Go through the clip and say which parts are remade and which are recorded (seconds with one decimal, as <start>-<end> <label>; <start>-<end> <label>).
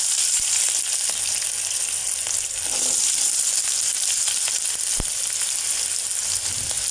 0.0-6.9 recorded